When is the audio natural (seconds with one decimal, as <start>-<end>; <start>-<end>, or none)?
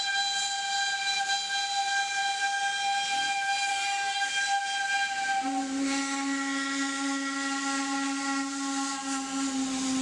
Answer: 0.0-3.7; 4.3-10.0